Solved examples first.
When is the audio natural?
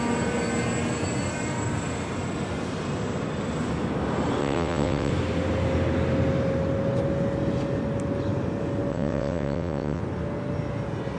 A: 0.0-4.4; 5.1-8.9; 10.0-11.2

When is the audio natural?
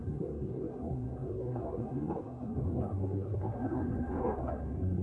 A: none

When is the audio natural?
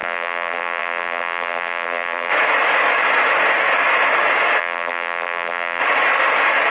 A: 2.3-4.6; 5.8-6.7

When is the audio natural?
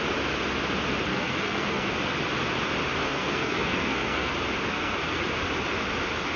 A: 0.0-1.1; 1.9-3.0; 4.3-4.7; 5.2-6.4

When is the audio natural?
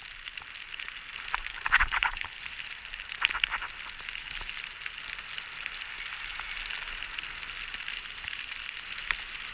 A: 0.0-1.5; 2.4-9.5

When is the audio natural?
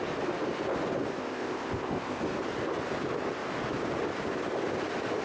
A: 0.0-1.2; 2.2-5.2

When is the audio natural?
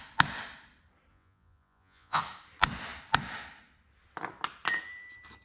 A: 0.0-1.1; 2.2-5.4